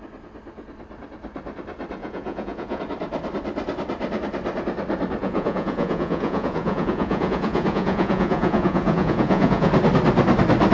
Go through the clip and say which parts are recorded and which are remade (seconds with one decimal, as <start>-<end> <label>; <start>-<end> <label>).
0.0-2.0 recorded; 2.0-2.8 remade; 2.8-5.2 recorded; 5.2-9.7 remade; 9.7-10.7 recorded